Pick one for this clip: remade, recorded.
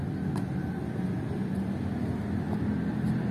recorded